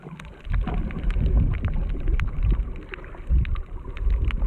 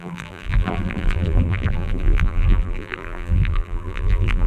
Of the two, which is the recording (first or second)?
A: first